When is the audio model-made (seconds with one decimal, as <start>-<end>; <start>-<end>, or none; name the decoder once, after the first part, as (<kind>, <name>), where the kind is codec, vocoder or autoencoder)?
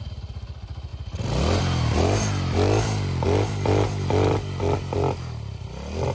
none